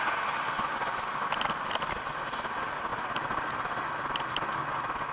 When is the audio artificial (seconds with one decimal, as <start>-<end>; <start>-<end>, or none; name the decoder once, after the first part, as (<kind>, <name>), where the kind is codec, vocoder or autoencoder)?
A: none